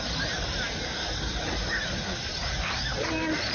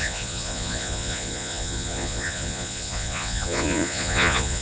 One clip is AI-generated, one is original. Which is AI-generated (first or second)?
second